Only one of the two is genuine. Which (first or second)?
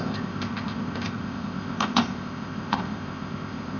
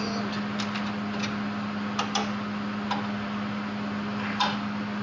second